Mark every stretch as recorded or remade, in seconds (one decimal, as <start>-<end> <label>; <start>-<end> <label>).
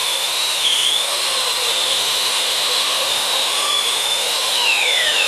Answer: 0.0-1.2 remade; 1.2-1.7 recorded; 1.7-5.3 remade